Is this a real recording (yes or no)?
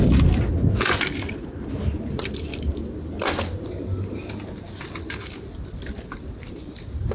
yes